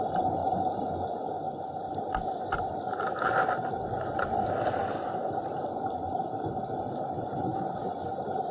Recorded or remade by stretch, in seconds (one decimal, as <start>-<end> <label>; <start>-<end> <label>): 0.0-8.5 recorded